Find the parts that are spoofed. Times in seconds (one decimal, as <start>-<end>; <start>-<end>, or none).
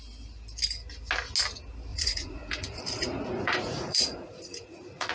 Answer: 1.9-5.1